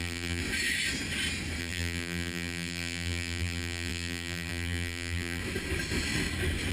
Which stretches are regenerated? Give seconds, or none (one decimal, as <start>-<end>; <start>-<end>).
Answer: 0.0-0.4; 1.6-5.4